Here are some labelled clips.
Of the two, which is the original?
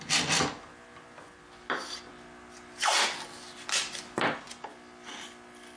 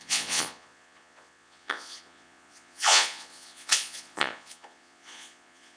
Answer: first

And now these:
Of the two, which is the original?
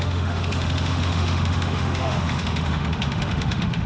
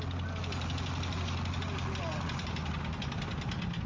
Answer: second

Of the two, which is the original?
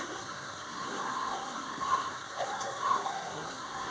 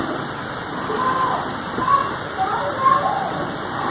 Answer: second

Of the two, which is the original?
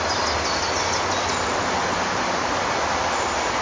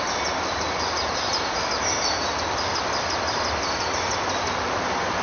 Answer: first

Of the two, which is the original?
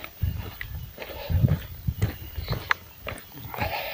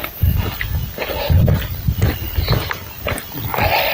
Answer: second